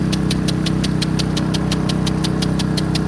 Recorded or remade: recorded